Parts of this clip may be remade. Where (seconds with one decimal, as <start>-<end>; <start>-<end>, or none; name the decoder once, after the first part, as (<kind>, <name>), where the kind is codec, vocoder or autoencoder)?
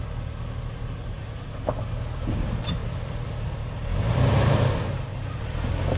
none